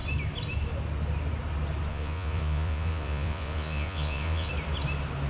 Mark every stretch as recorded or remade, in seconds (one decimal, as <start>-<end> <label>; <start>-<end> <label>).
0.0-1.9 recorded; 1.9-4.5 remade; 4.5-5.3 recorded